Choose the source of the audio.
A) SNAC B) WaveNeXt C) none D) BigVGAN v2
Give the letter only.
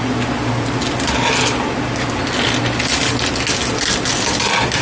C